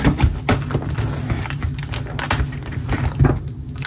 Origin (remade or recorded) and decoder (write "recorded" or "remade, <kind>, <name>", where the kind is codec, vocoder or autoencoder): recorded